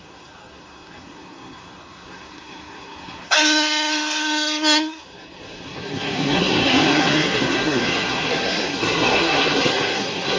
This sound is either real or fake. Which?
fake